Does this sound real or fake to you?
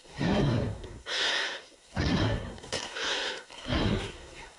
fake